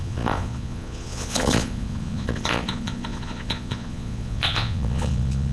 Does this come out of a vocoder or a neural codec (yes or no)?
yes